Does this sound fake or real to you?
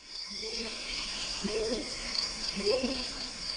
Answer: fake